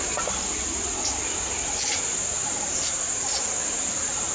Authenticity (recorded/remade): recorded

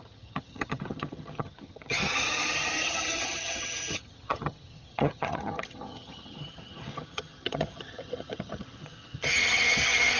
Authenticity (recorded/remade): remade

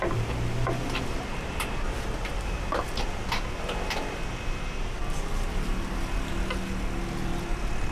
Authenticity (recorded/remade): recorded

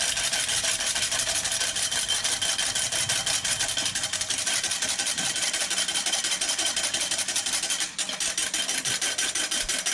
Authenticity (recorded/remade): recorded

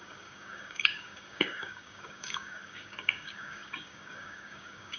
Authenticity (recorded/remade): remade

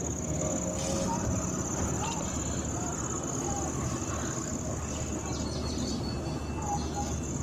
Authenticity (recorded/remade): recorded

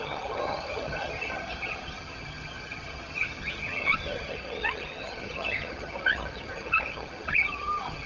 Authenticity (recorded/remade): remade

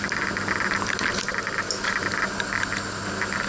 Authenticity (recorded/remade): recorded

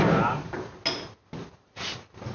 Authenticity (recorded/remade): recorded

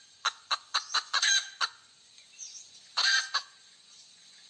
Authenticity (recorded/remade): remade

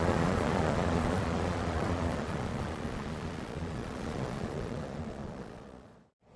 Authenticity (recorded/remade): remade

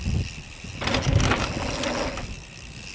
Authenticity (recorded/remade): recorded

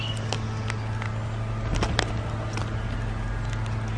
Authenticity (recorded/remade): recorded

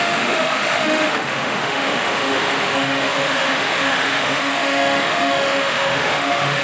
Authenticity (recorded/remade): remade